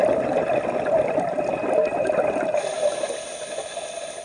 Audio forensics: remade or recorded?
recorded